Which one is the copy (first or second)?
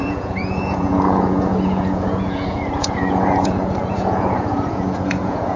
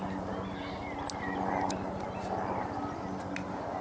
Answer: first